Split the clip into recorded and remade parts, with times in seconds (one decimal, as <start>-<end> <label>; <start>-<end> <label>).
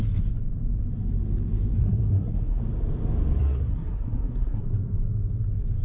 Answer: 0.0-1.8 recorded; 1.8-2.6 remade; 2.6-3.4 recorded; 3.4-4.6 remade; 4.6-5.8 recorded